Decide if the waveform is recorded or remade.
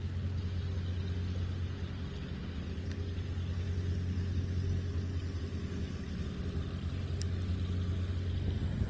recorded